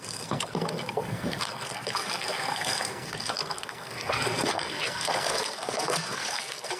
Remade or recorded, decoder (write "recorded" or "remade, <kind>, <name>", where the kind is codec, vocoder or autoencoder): remade, codec, SNAC